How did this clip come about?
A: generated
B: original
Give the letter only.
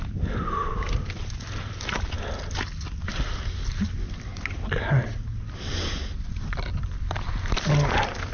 B